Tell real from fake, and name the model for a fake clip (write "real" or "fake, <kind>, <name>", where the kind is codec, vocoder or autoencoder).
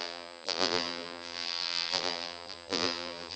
fake, vocoder, BigVGAN v2